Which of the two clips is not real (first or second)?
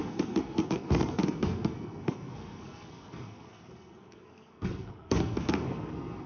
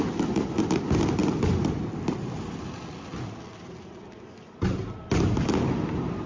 first